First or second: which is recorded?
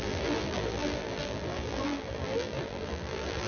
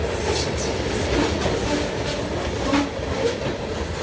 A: second